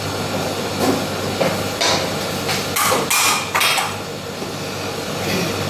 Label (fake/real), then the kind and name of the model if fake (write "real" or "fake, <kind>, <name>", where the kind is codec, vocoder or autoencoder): real